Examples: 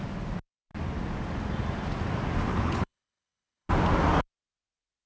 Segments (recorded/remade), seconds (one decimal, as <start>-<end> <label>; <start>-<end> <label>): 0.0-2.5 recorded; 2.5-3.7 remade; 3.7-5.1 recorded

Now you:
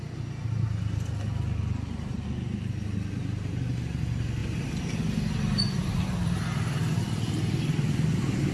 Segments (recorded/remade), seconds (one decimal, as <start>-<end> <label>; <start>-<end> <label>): 0.0-8.5 recorded

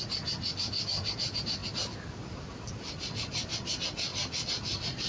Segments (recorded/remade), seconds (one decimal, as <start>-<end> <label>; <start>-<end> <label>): 0.0-5.1 recorded